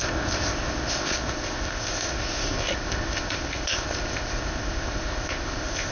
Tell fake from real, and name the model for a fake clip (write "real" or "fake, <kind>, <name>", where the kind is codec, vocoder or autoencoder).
fake, codec, ZipCodec